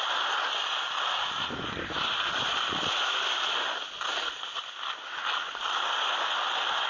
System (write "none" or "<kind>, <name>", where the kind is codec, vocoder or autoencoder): none